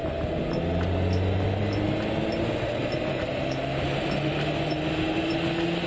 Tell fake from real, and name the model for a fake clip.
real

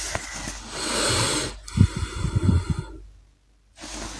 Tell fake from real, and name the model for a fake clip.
real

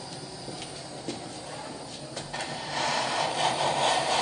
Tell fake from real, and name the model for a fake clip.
fake, vocoder, BigVGAN v2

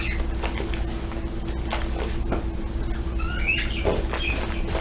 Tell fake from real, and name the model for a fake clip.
real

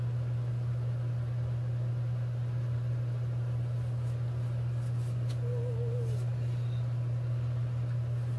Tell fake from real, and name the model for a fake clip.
real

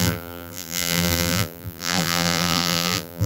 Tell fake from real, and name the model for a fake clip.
fake, vocoder, BigVGAN v2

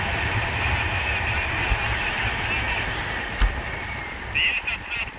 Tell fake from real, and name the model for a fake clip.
real